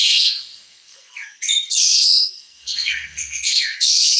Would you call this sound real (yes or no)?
no